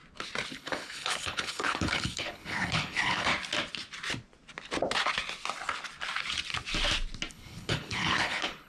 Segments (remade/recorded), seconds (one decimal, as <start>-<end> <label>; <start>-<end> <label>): 0.0-0.5 recorded; 0.5-3.3 remade; 3.3-7.3 recorded; 7.3-8.7 remade